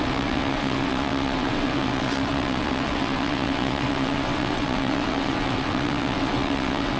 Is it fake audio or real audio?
fake